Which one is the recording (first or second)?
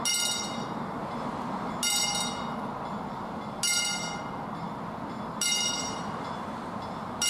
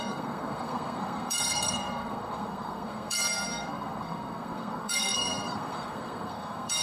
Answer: first